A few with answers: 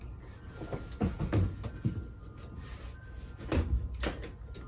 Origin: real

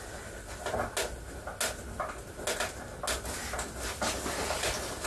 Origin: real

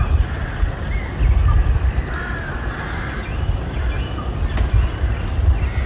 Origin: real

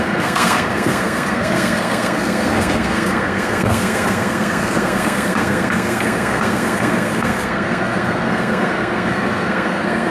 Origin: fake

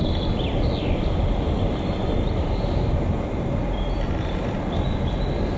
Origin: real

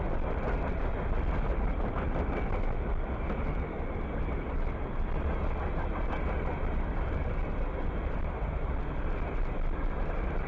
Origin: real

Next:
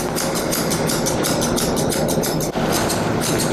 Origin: real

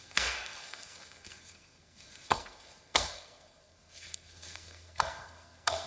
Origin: fake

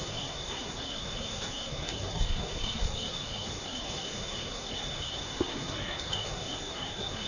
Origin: fake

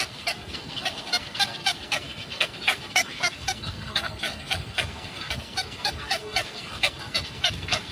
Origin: fake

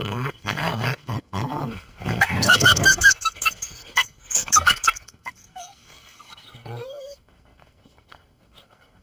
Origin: fake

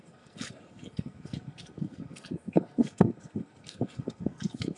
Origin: fake